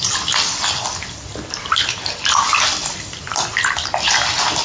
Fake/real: real